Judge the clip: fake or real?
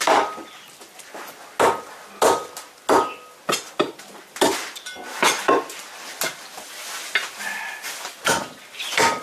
real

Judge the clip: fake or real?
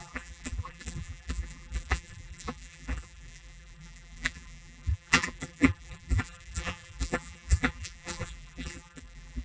fake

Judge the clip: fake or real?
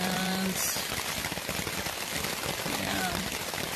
fake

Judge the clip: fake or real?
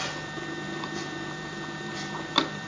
fake